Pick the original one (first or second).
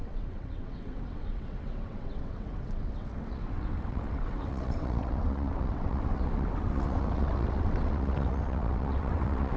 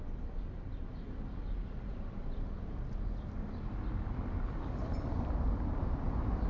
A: second